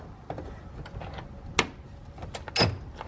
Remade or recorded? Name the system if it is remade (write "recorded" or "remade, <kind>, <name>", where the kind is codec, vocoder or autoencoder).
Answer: recorded